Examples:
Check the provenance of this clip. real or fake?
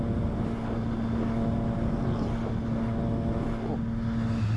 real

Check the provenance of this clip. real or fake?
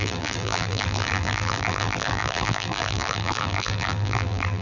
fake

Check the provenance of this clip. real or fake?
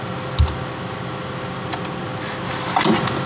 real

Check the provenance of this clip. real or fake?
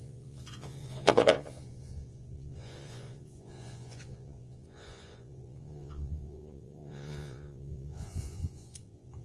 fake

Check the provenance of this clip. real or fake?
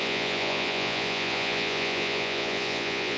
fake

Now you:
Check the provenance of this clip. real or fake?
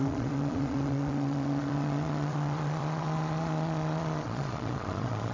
fake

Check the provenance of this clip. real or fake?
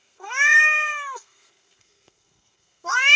fake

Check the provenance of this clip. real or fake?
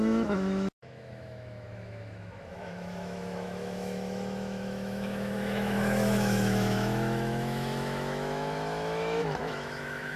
fake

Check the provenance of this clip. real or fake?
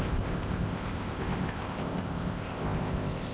fake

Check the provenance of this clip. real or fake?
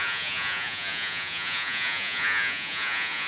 fake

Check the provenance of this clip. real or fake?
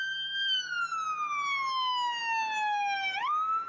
real